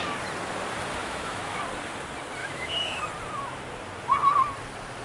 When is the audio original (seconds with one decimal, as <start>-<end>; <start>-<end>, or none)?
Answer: 0.0-1.0; 1.6-2.4; 3.0-5.0